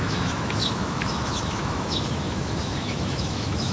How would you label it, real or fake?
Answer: fake